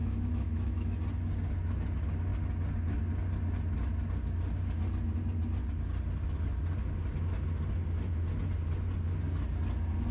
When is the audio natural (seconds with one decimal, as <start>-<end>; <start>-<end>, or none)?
1.0-10.1